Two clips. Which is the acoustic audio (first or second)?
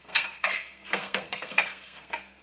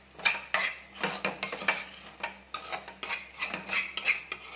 second